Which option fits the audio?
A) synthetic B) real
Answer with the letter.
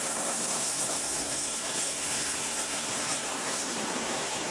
A